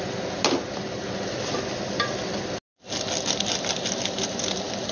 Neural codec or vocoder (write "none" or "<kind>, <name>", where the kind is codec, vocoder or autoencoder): none